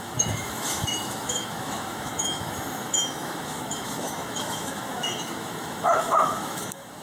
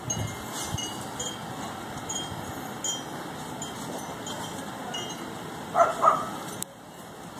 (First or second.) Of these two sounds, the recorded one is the second